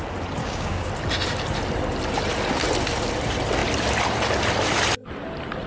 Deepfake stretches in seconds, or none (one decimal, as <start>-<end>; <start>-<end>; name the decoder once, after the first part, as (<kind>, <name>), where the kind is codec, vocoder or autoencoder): 0.4-0.9 (codec, DAC)